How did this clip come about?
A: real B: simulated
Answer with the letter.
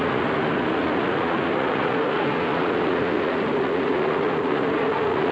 B